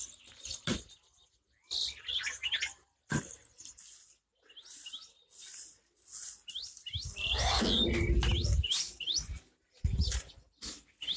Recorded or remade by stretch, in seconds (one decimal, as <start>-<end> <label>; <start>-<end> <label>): 0.0-11.2 recorded